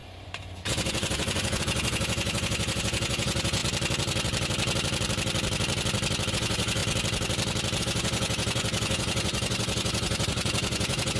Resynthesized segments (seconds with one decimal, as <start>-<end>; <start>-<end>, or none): 0.0-3.6; 6.3-6.8; 7.8-11.2